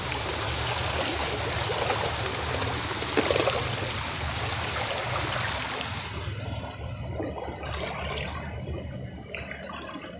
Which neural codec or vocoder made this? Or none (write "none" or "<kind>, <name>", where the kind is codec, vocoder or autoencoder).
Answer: none